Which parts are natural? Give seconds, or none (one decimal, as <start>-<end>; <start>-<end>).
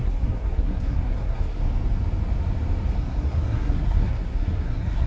1.6-2.9